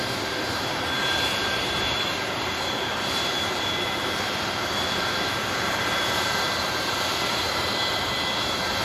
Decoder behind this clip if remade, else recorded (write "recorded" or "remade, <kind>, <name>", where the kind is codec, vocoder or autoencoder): remade, vocoder, BigVGAN v2